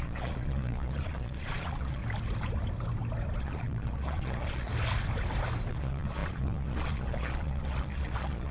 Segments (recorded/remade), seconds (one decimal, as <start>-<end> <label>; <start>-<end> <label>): 0.0-2.0 remade; 2.0-3.4 recorded; 3.4-4.7 remade; 4.7-5.7 recorded; 5.7-8.5 remade